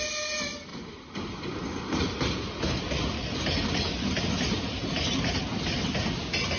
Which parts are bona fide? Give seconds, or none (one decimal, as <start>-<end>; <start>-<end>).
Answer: 0.0-6.6